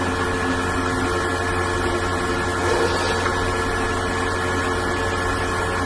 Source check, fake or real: real